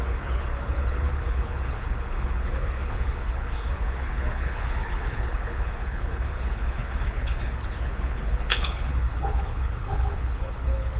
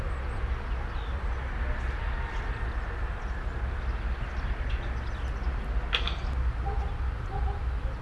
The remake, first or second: first